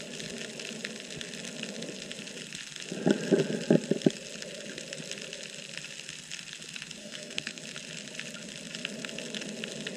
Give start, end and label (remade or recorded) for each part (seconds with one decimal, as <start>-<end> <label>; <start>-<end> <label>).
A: 0.0-7.0 recorded; 7.0-7.6 remade; 7.6-10.0 recorded